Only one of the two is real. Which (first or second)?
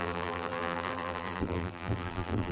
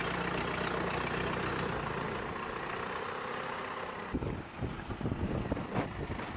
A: second